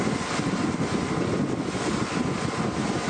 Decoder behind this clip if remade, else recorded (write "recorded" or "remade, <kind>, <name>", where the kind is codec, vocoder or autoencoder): recorded